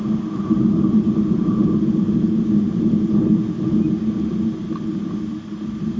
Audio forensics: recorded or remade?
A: recorded